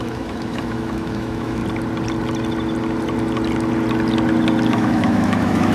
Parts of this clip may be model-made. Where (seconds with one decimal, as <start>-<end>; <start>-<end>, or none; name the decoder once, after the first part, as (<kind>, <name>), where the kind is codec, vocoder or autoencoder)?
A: 0.0-1.6 (autoencoder, DAC-VAE); 4.7-5.7